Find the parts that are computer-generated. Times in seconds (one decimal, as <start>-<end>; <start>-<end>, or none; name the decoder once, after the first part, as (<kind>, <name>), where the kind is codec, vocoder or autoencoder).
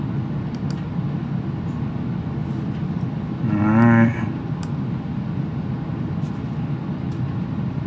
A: 4.1-4.9 (vocoder, BigVGAN v2)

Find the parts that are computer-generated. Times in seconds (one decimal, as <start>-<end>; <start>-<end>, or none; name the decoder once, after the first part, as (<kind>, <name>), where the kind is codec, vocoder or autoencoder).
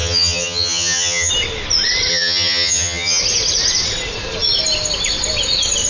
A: 0.0-1.3 (vocoder, HiFi-GAN); 2.1-3.2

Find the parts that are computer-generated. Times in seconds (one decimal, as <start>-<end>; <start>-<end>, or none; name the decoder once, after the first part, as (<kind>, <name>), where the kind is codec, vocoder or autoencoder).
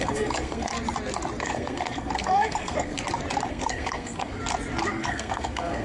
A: 0.0-0.7 (codec, SNAC); 1.4-2.9; 3.5-4.4; 4.9-5.8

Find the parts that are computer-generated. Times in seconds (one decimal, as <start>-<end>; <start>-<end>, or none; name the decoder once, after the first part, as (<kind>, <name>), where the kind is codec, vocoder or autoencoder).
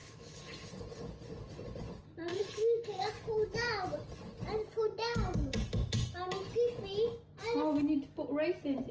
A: 0.0-0.7 (autoencoder, DAC-VAE); 2.3-3.1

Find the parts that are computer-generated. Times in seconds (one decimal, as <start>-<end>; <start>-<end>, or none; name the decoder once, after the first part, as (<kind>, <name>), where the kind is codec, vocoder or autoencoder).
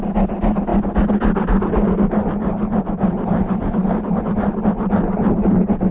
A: none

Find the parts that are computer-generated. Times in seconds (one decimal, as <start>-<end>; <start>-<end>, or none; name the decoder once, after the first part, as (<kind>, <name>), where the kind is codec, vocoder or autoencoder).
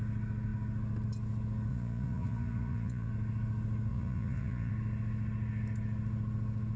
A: 1.7-3.1 (vocoder, Vocos); 3.9-4.7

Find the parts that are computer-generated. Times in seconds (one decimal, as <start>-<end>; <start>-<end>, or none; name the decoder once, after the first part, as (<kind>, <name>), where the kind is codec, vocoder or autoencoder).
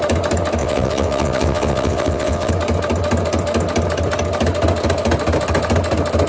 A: 0.6-2.5 (vocoder, WaveNeXt)